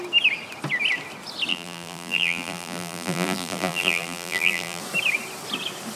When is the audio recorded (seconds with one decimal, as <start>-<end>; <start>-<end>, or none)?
0.0-1.5; 4.8-6.0

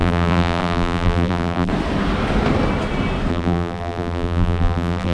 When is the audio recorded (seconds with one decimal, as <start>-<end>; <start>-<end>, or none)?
1.7-3.3

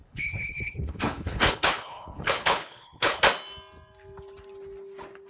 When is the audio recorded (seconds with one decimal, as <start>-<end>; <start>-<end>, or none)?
3.2-5.3